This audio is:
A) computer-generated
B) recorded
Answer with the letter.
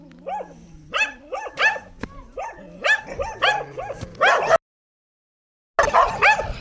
B